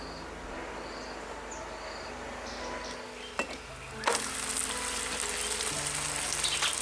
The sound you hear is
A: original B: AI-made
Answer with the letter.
A